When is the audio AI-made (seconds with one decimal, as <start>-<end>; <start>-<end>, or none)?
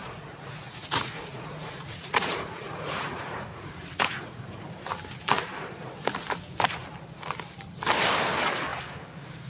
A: 0.0-4.6